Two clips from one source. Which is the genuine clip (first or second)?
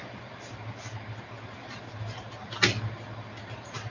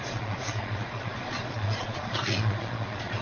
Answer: first